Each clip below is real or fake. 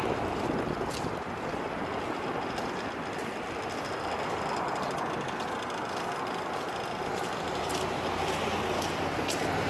real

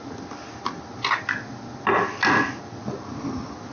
real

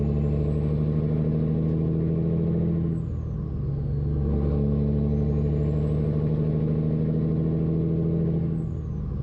real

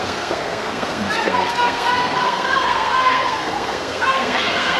fake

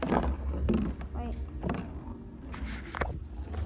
real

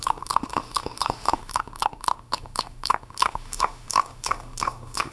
fake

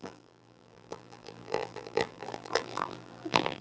fake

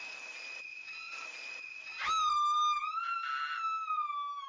real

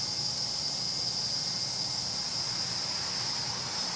real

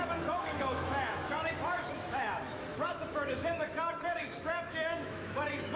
fake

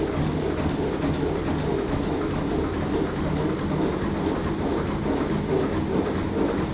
real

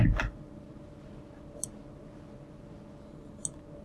real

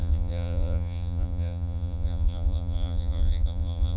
fake